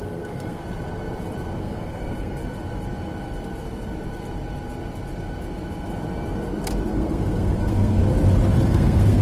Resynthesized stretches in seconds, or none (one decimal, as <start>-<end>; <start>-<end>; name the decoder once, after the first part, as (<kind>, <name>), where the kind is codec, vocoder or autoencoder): 0.0-0.6 (codec, SNAC); 1.6-2.4; 6.9-8.0; 8.7-9.2